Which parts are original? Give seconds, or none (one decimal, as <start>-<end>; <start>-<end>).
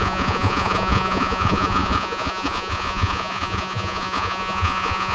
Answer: none